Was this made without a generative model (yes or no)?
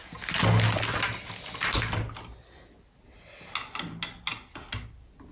yes